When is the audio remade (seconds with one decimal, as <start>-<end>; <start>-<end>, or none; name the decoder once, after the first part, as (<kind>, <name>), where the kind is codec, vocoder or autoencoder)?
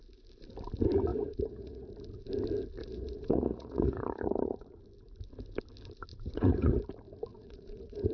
1.1-1.9 (vocoder, Vocos); 2.8-4.8; 6.1-6.8; 7.3-8.1